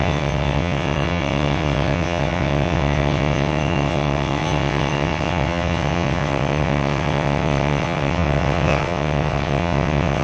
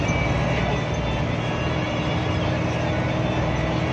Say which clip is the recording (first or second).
second